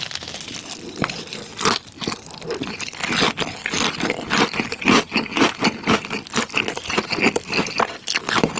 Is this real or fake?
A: real